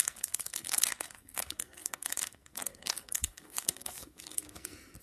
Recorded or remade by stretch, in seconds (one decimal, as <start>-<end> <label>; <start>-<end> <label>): 0.0-5.0 remade